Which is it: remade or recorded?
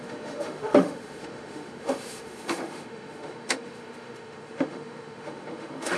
remade